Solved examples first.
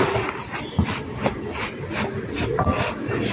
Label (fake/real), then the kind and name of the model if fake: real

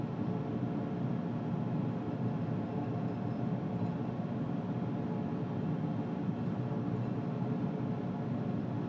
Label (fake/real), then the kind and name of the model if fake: real